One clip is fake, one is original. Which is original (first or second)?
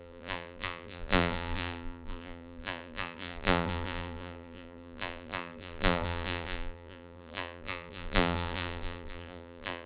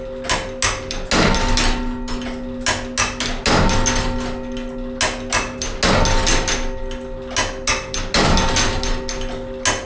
second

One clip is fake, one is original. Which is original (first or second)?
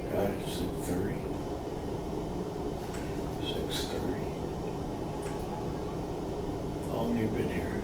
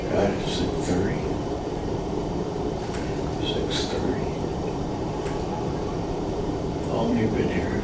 first